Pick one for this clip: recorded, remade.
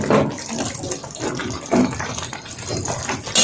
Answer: recorded